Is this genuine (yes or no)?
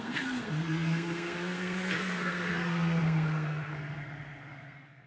no